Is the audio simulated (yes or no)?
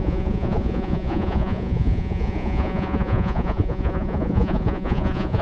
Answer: yes